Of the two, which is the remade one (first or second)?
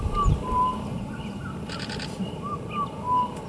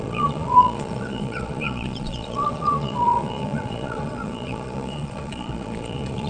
second